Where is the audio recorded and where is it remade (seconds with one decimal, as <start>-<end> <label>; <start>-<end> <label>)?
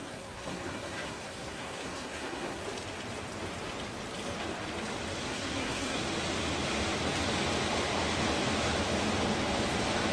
0.0-2.6 remade; 2.6-5.2 recorded; 5.2-6.0 remade; 6.0-10.1 recorded